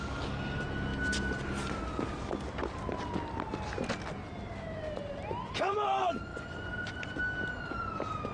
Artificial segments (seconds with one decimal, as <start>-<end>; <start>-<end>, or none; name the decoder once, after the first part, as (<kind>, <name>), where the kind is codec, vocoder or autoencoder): 6.3-7.2 (vocoder, Vocos)